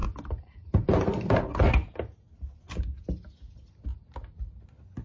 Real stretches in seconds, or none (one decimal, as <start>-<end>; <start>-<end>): 1.4-5.0